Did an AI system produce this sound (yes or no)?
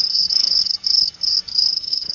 yes